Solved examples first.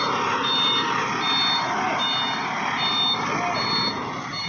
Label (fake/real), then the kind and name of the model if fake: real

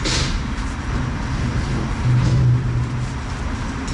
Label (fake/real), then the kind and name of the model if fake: real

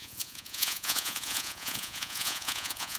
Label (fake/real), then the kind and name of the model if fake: fake, vocoder, Vocos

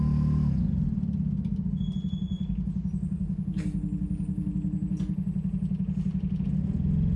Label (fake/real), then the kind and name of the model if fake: real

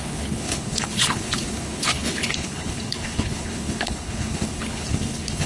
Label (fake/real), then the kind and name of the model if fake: fake, codec, HILCodec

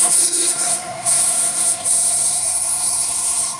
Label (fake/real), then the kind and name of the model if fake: fake, codec, SNAC